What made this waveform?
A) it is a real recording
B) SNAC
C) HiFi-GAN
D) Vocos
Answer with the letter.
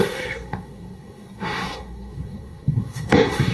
B